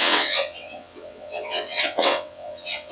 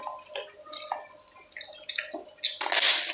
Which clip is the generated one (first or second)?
first